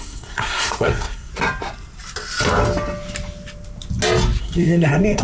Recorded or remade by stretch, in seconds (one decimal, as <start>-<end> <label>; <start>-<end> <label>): 0.0-1.3 remade; 1.3-4.4 recorded; 4.4-5.2 remade